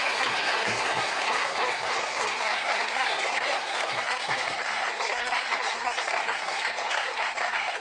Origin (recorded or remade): remade